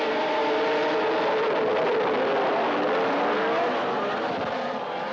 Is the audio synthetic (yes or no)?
no